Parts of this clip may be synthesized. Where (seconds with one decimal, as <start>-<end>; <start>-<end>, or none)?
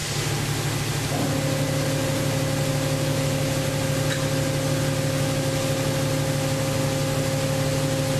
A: none